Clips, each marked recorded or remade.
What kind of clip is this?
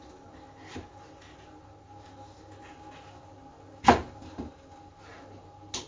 recorded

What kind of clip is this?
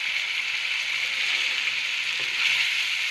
recorded